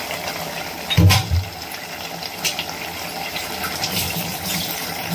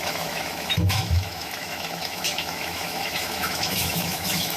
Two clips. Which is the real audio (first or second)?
first